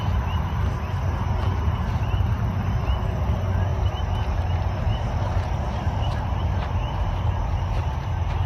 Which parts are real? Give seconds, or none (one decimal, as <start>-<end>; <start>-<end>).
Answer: 0.0-3.7; 8.1-8.5